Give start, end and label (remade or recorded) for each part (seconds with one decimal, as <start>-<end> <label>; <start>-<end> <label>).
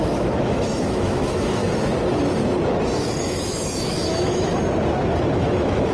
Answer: 0.0-1.6 remade; 1.6-3.2 recorded; 3.2-4.5 remade; 4.5-5.3 recorded; 5.3-5.9 remade